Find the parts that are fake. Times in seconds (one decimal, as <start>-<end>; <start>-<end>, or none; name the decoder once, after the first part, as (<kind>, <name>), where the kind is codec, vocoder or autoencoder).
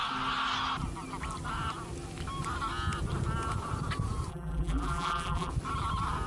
4.3-5.5 (vocoder, BigVGAN v2)